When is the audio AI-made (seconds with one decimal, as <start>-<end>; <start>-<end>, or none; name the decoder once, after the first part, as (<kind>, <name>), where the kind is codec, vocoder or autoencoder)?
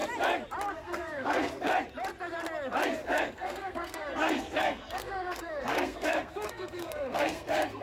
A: 0.7-1.7 (codec, SNAC); 3.0-7.8